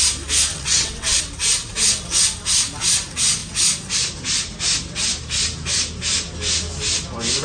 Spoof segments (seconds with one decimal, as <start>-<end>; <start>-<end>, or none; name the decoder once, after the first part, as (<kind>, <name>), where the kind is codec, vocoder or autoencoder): 0.5-1.2 (vocoder, WaveNeXt)